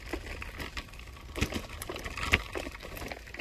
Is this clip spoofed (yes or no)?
no